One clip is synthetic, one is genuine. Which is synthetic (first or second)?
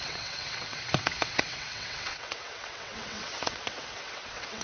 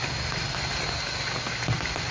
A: first